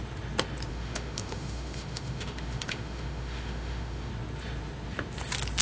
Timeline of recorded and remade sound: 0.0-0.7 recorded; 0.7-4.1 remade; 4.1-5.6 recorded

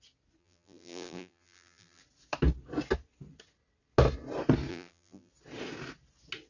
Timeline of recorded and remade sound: 0.0-0.4 recorded; 0.4-2.0 remade; 2.0-4.7 recorded; 4.7-5.3 remade; 5.3-6.5 recorded

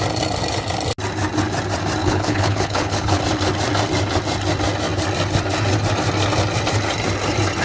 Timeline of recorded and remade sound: 0.0-2.0 recorded; 2.0-3.2 remade; 3.2-7.6 recorded